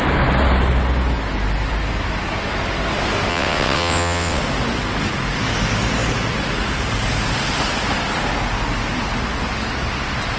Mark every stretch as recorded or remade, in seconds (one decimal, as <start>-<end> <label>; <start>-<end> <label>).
0.0-3.3 recorded; 3.3-4.4 remade; 4.4-10.4 recorded